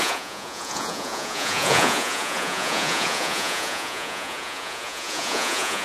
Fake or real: fake